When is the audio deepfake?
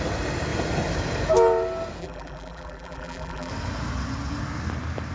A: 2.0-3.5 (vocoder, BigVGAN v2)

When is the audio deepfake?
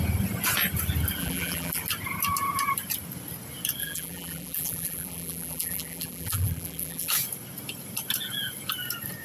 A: 1.2-1.8 (vocoder, BigVGAN v2); 3.8-7.1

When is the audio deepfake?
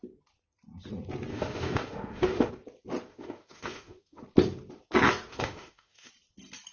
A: 1.3-2.5 (autoencoder, DAC-VAE); 3.1-4.2; 5.3-6.1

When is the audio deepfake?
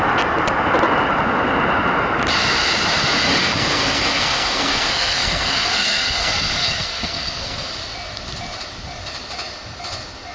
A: 3.4-7.7 (codec, SNAC)